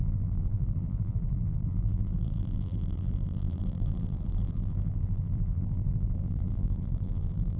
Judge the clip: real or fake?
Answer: fake